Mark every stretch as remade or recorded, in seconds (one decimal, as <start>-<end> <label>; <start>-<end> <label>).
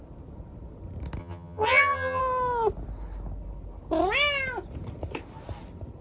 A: 0.0-1.2 recorded; 1.2-2.2 remade; 2.2-6.0 recorded